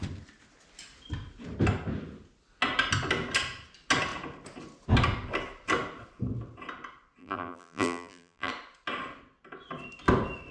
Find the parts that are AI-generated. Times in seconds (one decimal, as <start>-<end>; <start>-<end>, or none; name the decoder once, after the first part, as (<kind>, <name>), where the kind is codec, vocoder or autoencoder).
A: 7.2-8.5 (vocoder, BigVGAN v2)